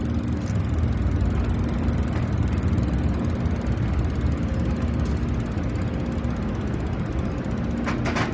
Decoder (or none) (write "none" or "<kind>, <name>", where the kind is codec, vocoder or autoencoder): none